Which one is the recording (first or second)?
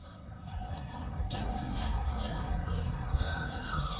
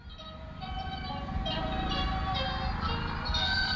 second